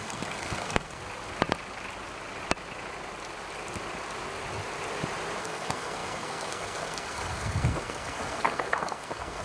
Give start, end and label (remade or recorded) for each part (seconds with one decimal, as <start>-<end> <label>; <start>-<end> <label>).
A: 0.0-1.0 remade; 1.0-5.4 recorded; 5.4-9.4 remade